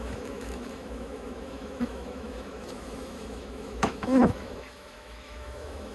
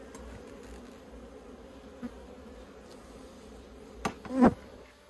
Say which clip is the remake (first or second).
first